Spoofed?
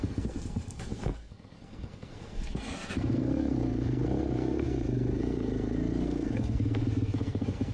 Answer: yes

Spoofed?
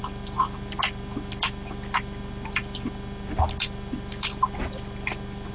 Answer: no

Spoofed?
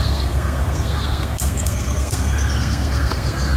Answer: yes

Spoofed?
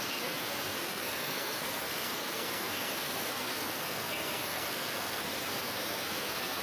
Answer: yes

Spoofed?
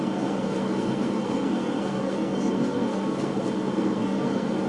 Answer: yes